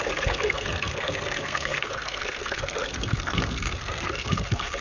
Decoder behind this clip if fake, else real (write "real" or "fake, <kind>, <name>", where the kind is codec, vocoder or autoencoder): fake, codec, SNAC